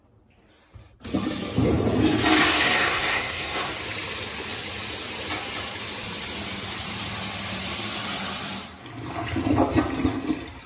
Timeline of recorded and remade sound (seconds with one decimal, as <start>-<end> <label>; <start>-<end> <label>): 0.0-2.4 recorded; 2.4-3.7 remade; 3.7-10.7 recorded